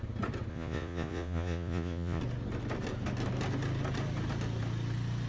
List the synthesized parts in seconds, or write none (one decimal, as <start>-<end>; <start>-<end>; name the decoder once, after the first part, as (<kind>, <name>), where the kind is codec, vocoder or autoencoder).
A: 0.5-2.2 (vocoder, Vocos)